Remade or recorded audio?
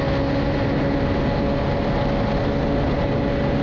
recorded